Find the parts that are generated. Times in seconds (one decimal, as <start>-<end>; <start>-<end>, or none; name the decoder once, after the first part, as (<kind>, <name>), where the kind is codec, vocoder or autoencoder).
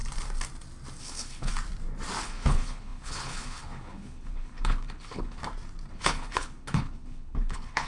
1.0-1.5 (codec, HILCodec); 2.2-5.4; 5.9-7.9